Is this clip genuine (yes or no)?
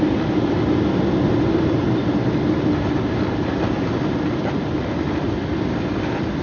yes